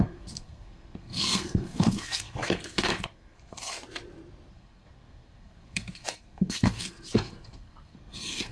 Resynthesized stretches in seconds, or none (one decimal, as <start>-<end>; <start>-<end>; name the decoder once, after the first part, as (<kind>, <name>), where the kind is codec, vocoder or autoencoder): 0.0-3.8 (codec, SNAC); 4.5-8.5